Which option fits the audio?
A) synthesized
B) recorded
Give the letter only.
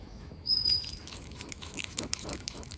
A